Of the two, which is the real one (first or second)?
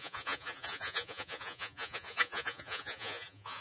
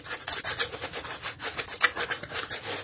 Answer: second